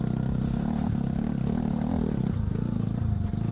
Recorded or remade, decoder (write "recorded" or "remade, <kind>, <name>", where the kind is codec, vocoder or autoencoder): recorded